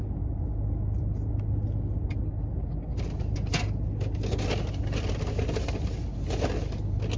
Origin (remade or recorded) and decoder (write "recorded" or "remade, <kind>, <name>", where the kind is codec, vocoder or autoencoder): recorded